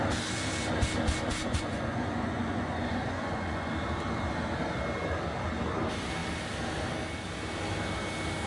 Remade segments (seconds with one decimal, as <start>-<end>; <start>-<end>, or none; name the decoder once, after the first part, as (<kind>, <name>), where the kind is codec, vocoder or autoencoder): 1.4-3.7 (vocoder, Vocos)